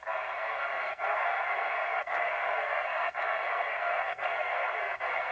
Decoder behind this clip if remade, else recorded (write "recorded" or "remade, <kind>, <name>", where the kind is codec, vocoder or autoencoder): remade, codec, SNAC